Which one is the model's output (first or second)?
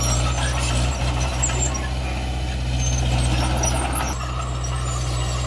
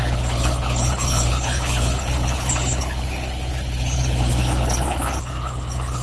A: second